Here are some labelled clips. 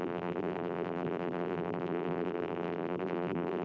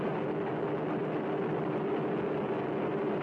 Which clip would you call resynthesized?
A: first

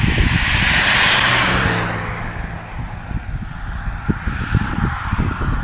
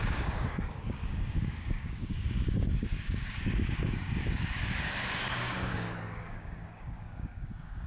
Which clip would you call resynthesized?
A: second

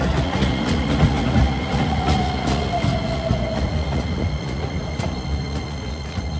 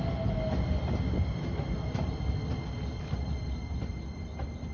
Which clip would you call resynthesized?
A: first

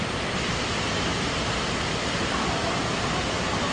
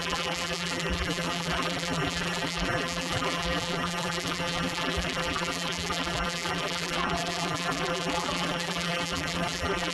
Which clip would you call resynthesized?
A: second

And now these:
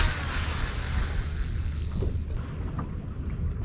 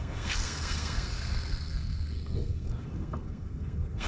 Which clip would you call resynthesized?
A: second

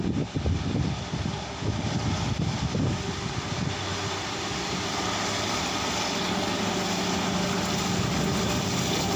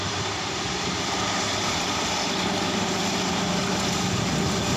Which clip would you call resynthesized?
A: second